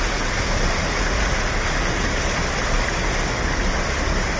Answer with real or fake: real